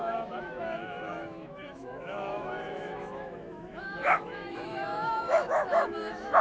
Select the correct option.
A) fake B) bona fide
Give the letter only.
A